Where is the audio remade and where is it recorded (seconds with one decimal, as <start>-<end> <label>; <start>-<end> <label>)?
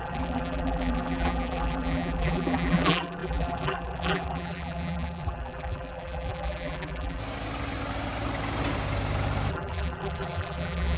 0.0-7.2 remade; 7.2-9.5 recorded; 9.5-11.0 remade